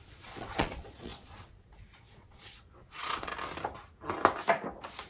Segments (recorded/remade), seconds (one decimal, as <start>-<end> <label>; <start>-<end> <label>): 0.0-3.3 remade; 3.3-5.1 recorded